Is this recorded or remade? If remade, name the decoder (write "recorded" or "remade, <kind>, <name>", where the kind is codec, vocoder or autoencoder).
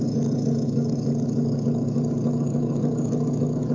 remade, codec, DAC